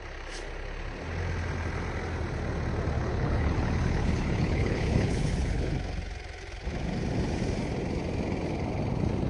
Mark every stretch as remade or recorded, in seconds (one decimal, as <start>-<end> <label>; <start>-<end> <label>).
0.0-3.0 recorded; 3.0-5.7 remade; 5.7-9.3 recorded